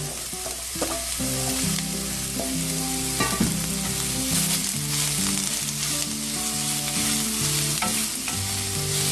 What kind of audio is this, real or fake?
real